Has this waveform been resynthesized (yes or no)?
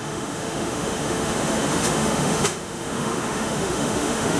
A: yes